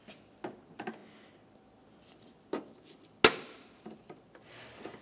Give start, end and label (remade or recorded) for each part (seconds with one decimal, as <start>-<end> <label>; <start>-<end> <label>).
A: 0.0-5.0 recorded